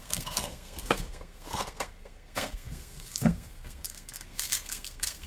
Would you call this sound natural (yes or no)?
no